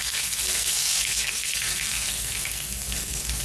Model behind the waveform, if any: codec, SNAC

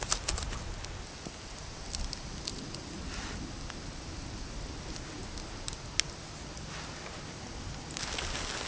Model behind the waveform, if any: none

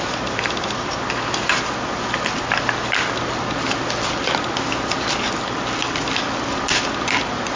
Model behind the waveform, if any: none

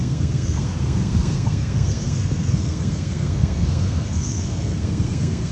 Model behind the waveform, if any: codec, SNAC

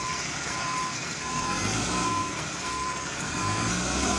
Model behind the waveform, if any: codec, SNAC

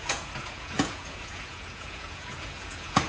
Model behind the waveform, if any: vocoder, Vocos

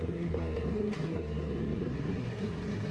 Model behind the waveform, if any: codec, SNAC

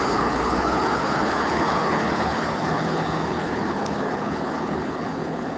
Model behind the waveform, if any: codec, HILCodec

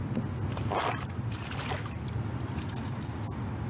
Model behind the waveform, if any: none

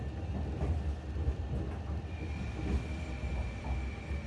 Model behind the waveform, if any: none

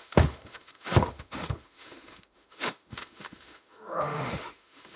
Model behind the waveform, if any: autoencoder, DAC-VAE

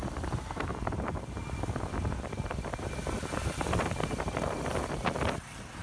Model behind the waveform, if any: none